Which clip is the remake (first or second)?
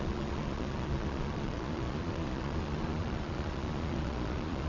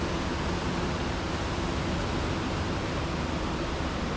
first